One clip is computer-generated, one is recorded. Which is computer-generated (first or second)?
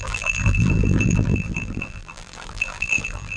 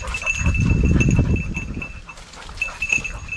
first